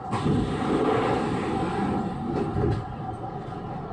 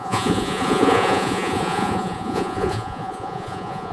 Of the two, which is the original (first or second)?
first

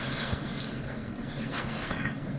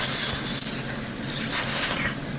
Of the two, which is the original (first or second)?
second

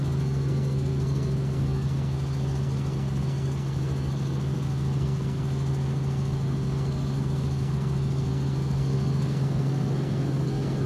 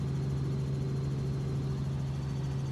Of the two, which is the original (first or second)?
second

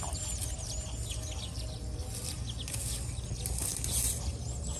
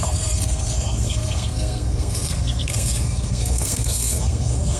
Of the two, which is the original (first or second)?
first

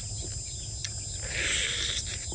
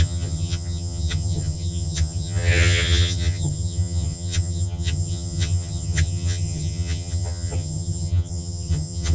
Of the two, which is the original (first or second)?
first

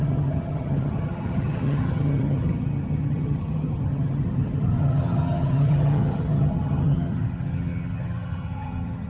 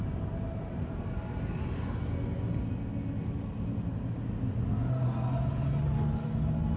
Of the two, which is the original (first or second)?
second